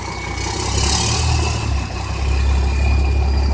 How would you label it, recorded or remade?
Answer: recorded